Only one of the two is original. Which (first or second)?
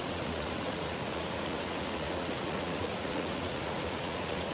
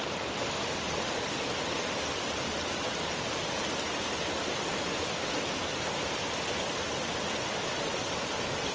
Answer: second